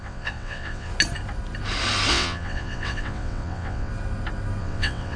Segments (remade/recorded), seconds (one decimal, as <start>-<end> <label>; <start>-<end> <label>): 0.0-0.9 remade; 0.9-2.1 recorded; 2.1-3.9 remade; 3.9-4.6 recorded; 4.6-5.2 remade